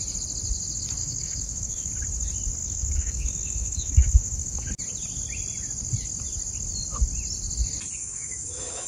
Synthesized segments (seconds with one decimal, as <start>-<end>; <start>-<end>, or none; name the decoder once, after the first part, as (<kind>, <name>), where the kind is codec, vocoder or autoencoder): 1.0-1.9 (autoencoder, DAC-VAE); 2.6-4.7; 8.0-8.9